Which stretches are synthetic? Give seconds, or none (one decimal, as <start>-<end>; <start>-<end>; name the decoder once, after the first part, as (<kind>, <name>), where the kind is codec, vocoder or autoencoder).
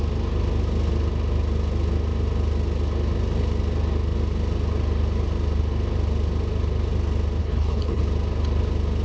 7.4-8.0 (codec, HILCodec)